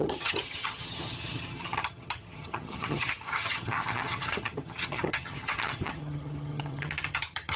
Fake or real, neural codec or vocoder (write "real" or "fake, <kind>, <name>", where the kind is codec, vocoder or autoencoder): fake, vocoder, HiFi-GAN